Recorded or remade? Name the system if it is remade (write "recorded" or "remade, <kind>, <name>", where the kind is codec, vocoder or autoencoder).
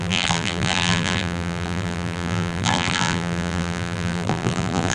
remade, vocoder, BigVGAN v2